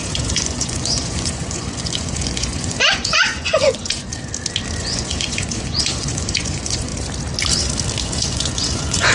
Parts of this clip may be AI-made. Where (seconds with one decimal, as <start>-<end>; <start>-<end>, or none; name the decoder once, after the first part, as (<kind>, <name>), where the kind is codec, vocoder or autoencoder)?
0.0-4.1 (vocoder, Vocos); 4.8-6.9; 8.0-9.1